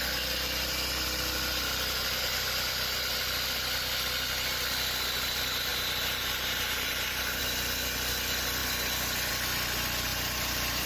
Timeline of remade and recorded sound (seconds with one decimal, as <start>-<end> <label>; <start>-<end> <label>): 0.0-5.7 recorded; 5.7-7.4 remade; 7.4-10.1 recorded; 10.1-10.9 remade